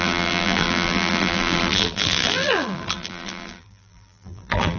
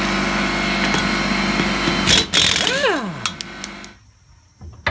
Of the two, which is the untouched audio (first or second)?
second